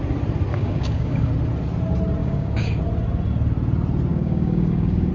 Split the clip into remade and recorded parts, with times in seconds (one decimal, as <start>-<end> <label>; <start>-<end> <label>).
0.0-0.5 recorded; 0.5-1.3 remade; 1.3-2.2 recorded; 2.2-2.8 remade; 2.8-4.1 recorded; 4.1-5.1 remade